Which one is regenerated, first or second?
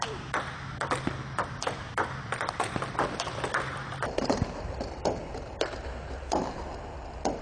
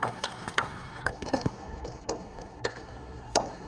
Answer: second